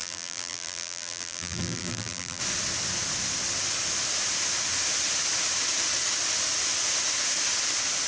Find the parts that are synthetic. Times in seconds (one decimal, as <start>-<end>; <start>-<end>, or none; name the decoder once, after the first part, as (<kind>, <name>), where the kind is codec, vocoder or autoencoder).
0.0-2.4 (vocoder, BigVGAN v2)